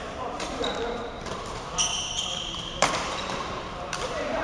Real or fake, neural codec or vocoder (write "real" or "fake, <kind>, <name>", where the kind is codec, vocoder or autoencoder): fake, vocoder, BigVGAN v2